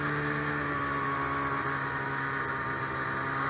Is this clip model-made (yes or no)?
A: no